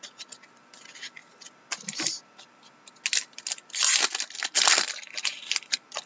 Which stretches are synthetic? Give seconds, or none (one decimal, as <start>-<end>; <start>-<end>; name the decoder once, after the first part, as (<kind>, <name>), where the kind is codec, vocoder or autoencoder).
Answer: none

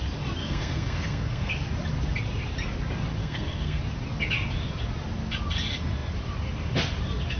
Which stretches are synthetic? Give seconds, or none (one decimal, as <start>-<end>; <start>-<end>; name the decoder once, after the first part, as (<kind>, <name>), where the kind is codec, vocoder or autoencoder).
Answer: 0.4-1.5 (codec, SNAC); 3.2-3.8